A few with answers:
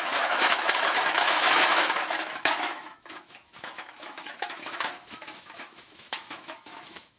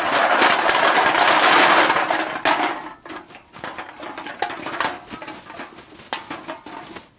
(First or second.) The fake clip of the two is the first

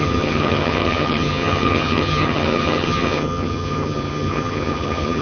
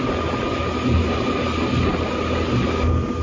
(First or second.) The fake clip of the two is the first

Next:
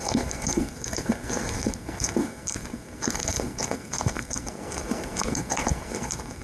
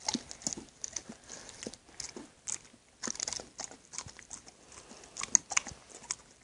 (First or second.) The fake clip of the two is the first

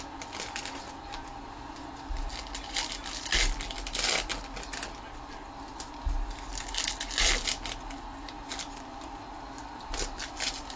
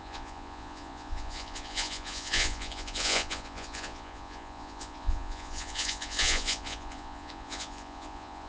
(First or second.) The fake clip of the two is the second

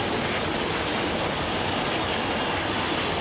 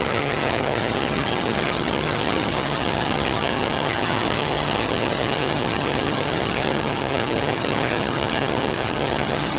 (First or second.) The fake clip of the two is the second